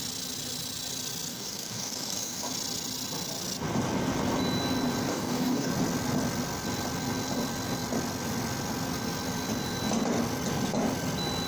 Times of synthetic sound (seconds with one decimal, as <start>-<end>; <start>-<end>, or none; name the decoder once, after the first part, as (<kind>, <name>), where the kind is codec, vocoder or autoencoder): 1.3-2.5 (codec, DAC); 5.1-5.7